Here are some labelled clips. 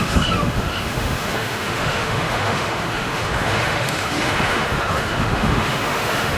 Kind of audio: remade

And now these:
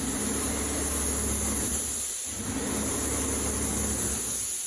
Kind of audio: recorded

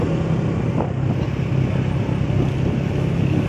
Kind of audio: recorded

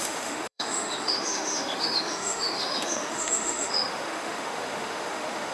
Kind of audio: remade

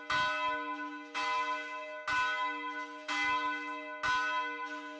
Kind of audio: recorded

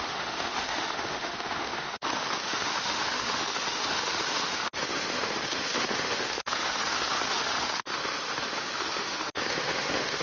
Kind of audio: remade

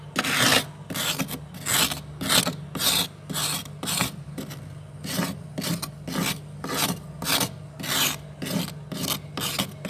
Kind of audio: recorded